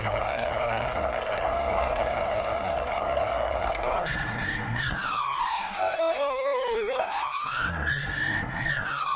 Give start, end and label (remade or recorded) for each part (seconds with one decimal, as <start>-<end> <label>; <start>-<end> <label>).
0.0-9.2 remade